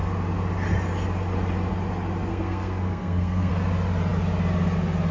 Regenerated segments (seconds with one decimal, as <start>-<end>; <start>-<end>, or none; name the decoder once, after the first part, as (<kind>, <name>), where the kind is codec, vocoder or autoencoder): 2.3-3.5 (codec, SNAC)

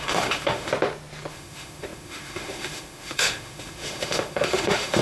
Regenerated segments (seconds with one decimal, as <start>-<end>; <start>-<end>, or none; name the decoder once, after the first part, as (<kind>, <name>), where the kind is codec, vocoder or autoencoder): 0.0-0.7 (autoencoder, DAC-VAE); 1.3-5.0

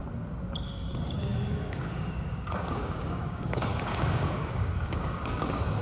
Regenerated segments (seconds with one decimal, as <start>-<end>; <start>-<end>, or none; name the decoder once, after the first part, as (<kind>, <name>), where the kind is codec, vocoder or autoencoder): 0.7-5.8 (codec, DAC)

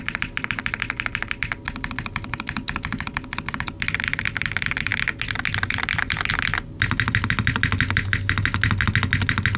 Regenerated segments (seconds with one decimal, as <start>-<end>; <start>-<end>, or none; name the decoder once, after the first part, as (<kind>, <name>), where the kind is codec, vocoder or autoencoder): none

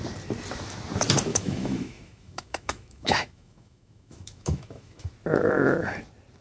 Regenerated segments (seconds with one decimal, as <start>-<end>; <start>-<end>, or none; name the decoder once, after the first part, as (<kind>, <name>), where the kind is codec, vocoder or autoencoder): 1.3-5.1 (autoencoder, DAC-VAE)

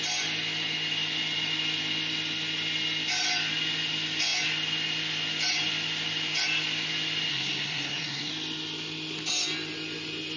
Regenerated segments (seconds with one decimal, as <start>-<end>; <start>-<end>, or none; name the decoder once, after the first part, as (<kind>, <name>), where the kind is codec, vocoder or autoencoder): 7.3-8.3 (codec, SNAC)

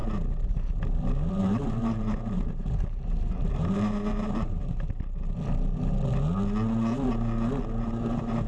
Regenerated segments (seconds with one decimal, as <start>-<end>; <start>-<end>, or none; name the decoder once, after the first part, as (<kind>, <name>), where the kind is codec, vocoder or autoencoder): 1.3-4.6 (vocoder, BigVGAN v2); 7.8-8.5